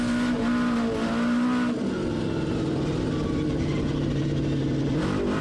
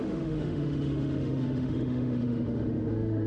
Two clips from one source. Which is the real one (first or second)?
first